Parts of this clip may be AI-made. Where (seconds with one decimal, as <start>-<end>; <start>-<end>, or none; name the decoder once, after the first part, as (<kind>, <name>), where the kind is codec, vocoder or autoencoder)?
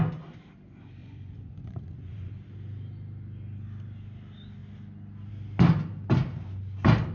1.0-2.3 (vocoder, Vocos)